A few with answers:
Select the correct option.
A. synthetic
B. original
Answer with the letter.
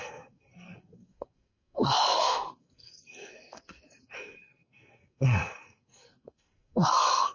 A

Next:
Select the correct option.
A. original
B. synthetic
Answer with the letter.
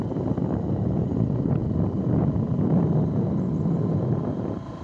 A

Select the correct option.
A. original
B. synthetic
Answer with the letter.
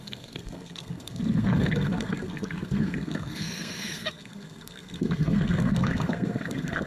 B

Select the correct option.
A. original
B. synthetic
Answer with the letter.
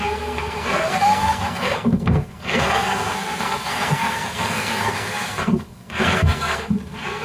B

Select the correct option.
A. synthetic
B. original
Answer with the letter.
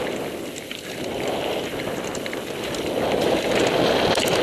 B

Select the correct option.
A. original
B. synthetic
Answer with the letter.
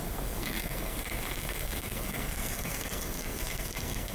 B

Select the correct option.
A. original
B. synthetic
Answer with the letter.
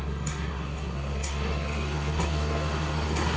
B